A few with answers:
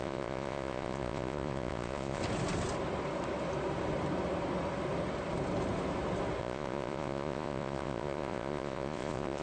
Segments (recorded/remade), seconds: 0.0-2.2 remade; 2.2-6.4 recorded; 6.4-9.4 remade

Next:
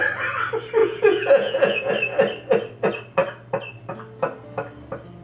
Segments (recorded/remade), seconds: 0.0-0.8 recorded; 0.8-1.9 remade; 1.9-5.2 recorded

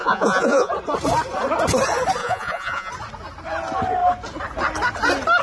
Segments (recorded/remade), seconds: 0.0-0.7 remade; 0.7-2.2 recorded; 2.2-2.9 remade; 2.9-5.4 recorded